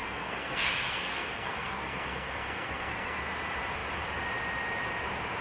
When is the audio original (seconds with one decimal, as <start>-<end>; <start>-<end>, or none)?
3.2-5.4